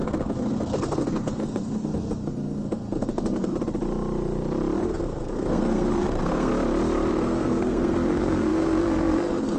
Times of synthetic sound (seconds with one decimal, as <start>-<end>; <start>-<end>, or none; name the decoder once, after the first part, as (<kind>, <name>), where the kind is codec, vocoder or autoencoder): 0.0-3.5 (codec, SNAC); 4.8-6.5; 7.1-9.6